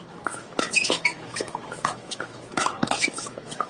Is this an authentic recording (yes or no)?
no